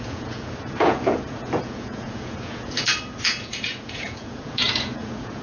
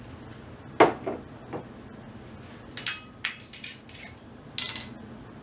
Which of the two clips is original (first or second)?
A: second